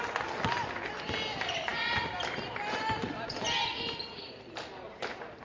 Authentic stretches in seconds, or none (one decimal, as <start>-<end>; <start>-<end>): 0.0-5.4